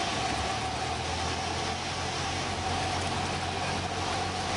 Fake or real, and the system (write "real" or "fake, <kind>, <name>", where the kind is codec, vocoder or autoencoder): real